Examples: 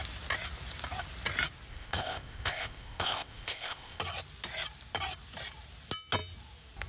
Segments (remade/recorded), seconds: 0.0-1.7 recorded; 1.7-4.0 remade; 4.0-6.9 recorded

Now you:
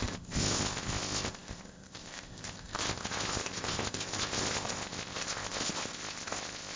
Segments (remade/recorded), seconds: 0.0-6.8 remade

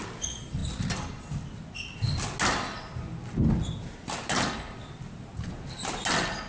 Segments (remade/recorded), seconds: 0.0-6.5 recorded

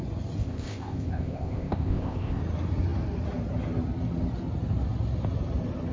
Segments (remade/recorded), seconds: 0.0-0.4 recorded; 0.4-2.4 remade; 2.4-5.9 recorded

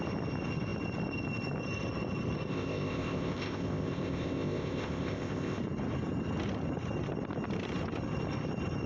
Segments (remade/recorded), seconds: 0.0-2.5 recorded; 2.5-5.6 remade; 5.6-8.9 recorded

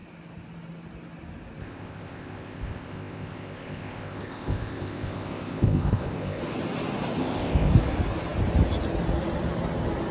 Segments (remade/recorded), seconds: 0.0-1.6 recorded; 1.6-6.4 remade; 6.4-7.2 recorded; 7.2-7.7 remade; 7.7-10.1 recorded

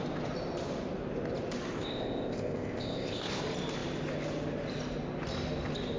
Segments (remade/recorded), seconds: 0.0-1.7 recorded; 1.7-3.4 remade; 3.4-6.0 recorded